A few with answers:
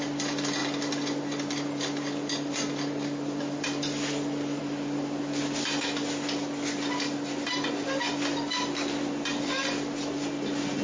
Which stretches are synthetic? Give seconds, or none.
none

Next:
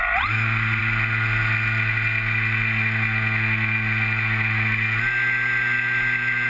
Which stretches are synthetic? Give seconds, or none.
none

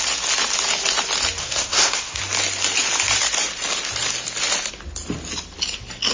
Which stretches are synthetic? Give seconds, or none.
1.4-2.2 (codec, SNAC)

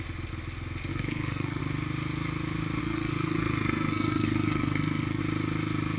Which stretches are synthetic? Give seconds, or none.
0.9-1.6 (codec, SNAC); 2.8-5.2

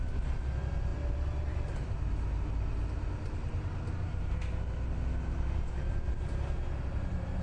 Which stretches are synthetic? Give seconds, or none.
none

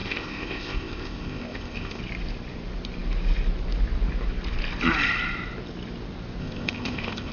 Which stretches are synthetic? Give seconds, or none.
0.0-2.0 (codec, ZipCodec); 6.4-7.3